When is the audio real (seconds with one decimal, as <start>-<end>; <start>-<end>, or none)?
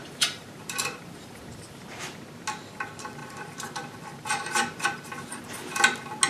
1.4-3.2; 5.4-6.3